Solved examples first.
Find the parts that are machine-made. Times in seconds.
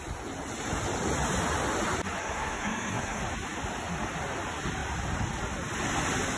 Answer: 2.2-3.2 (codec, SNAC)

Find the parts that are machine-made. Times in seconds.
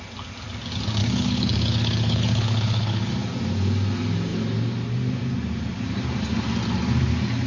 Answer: 1.0-3.1 (codec, HILCodec)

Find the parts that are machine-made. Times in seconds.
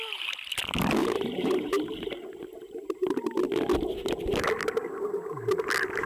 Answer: 1.0-3.3 (vocoder, BigVGAN v2)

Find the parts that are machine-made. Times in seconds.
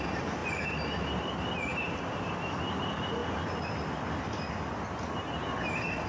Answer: 0.4-1.1 (vocoder, BigVGAN v2); 1.7-2.8; 3.2-4.5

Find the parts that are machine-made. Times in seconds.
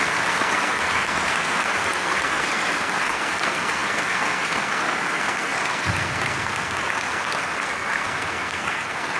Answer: 0.0-9.2 (codec, SNAC)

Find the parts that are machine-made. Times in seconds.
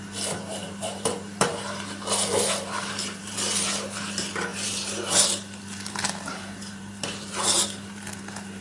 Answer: 0.6-1.5 (vocoder, BigVGAN v2); 2.3-4.1; 4.5-8.6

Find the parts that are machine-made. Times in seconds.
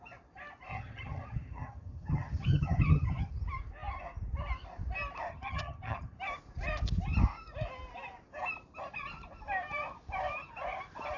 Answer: 0.7-3.3 (vocoder, HiFi-GAN); 5.3-6.2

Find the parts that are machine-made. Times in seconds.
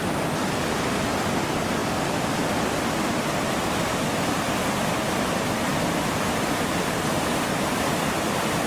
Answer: none